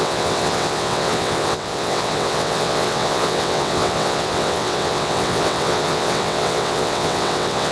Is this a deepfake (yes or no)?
yes